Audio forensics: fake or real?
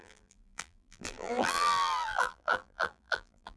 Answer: fake